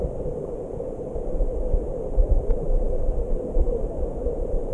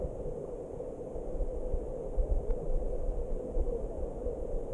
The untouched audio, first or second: second